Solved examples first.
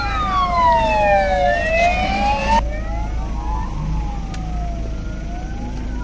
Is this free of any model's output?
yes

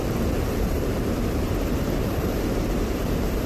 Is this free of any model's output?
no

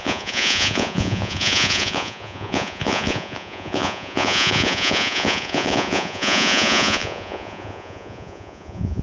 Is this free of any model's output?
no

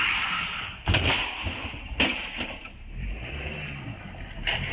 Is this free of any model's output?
no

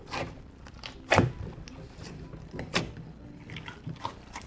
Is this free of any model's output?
yes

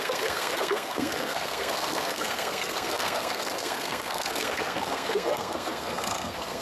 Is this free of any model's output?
no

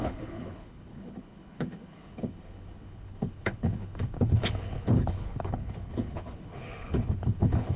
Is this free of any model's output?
no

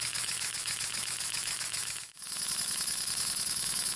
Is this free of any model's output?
no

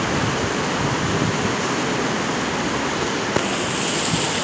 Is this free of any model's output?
yes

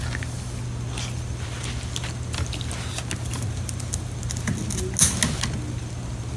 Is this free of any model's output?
yes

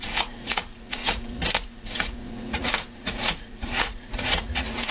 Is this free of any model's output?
no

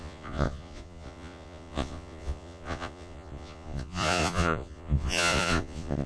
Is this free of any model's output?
no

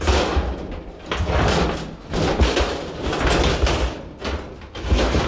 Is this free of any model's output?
yes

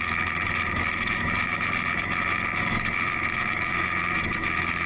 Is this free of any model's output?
no